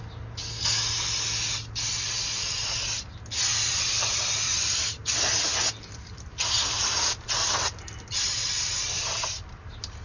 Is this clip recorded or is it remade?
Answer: recorded